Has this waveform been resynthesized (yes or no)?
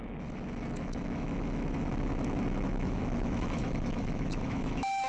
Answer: yes